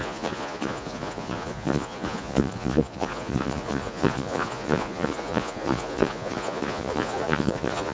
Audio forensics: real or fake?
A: fake